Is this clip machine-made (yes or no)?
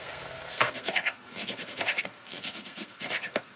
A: yes